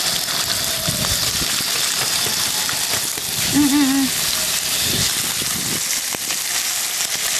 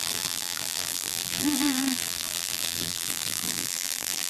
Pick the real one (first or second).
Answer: first